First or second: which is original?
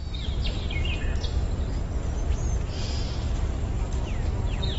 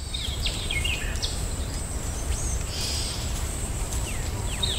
first